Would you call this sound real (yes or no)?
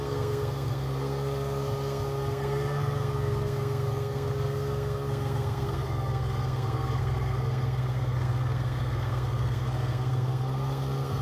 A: no